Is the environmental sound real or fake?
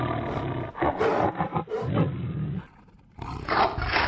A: real